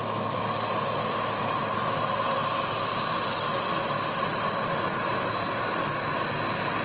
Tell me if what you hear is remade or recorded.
recorded